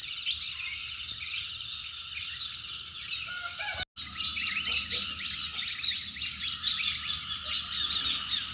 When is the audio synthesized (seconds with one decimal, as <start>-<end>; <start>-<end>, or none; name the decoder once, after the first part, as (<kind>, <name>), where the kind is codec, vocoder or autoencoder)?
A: none